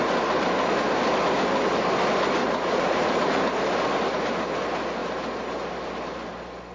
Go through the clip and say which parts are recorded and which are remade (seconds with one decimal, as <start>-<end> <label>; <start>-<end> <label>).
0.0-2.4 recorded; 2.4-3.4 remade; 3.4-6.7 recorded

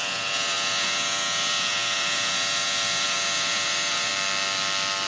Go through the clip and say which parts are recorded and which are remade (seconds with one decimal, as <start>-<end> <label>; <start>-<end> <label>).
0.0-4.1 remade; 4.1-5.1 recorded

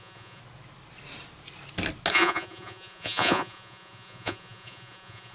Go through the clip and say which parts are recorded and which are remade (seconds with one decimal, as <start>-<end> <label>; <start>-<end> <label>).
0.0-0.4 remade; 0.4-2.1 recorded; 2.1-5.3 remade

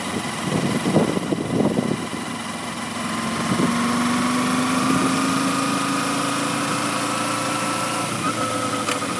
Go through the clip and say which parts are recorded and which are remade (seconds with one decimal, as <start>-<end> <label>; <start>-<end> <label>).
0.0-9.2 recorded

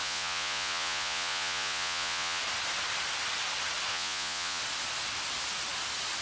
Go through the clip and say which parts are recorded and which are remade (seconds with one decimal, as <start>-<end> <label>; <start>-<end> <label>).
0.0-2.4 remade; 2.4-3.9 recorded; 3.9-4.6 remade; 4.6-6.2 recorded

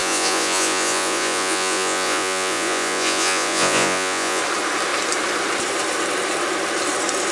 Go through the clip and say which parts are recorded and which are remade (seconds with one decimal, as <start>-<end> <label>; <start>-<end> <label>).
0.0-4.4 remade; 4.4-7.3 recorded

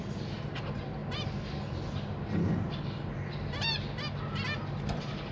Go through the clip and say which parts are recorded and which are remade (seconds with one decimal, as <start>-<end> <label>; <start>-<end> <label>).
0.0-5.3 recorded